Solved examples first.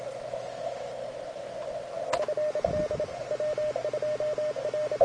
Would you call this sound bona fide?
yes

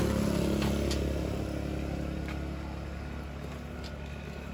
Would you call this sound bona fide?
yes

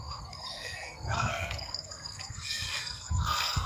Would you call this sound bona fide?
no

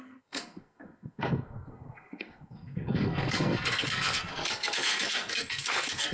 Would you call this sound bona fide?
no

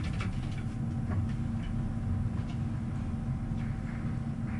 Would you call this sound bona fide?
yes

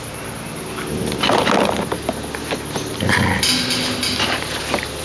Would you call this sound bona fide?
yes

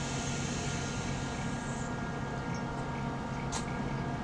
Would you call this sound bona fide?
yes